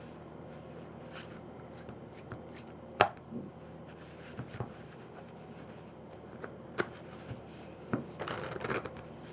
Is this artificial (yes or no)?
yes